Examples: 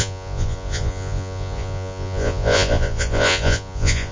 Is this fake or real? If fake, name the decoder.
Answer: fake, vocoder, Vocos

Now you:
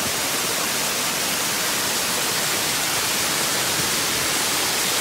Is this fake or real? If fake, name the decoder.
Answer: real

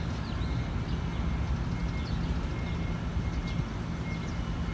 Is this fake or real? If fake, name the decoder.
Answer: real